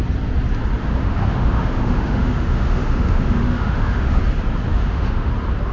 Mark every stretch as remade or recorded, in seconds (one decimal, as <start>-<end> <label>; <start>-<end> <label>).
0.0-0.8 recorded; 0.8-4.2 remade; 4.2-4.7 recorded; 4.7-5.3 remade; 5.3-5.7 recorded